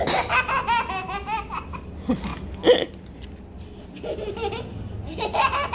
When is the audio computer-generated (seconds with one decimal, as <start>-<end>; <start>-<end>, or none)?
none